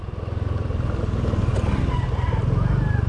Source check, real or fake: real